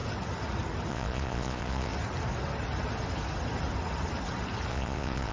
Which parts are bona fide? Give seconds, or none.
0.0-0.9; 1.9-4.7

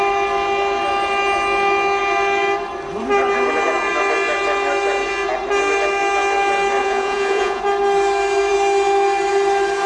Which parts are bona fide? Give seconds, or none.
0.0-6.8; 7.6-9.9

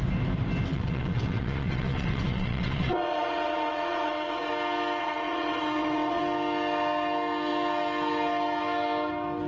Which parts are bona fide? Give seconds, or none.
0.0-0.7; 4.5-5.0; 6.2-9.5

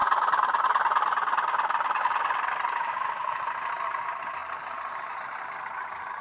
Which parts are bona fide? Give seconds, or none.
0.0-6.2

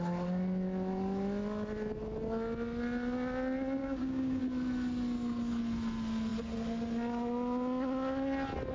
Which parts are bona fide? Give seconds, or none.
0.0-3.8; 4.4-8.7

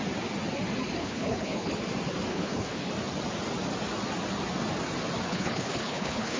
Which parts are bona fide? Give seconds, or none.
0.0-1.0; 1.8-2.3; 2.9-5.3

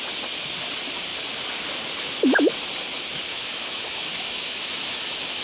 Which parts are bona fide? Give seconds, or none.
0.0-3.3